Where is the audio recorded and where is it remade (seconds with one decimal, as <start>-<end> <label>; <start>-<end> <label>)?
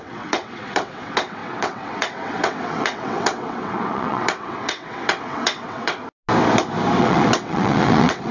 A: 0.0-6.0 remade; 6.0-7.0 recorded; 7.0-8.3 remade